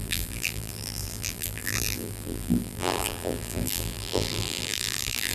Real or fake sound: fake